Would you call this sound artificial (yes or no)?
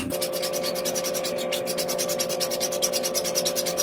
no